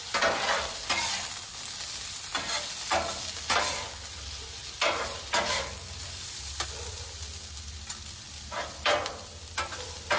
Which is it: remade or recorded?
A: recorded